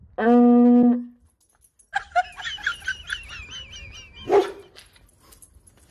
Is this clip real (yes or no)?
yes